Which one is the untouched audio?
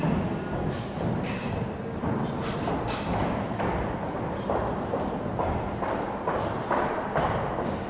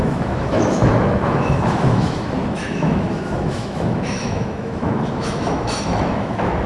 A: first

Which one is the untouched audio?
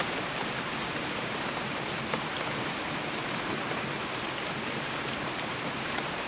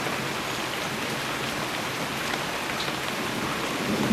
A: second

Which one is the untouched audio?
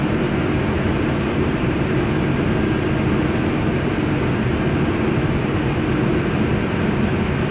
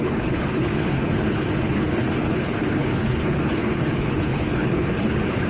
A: first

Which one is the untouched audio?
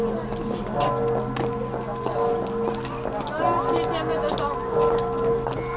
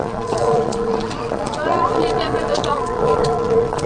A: first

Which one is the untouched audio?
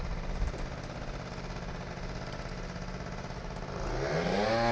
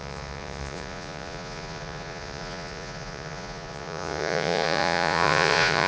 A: first